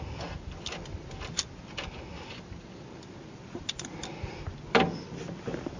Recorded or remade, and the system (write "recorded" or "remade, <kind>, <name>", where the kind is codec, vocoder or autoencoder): recorded